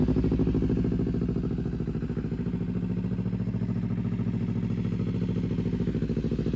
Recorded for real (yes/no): yes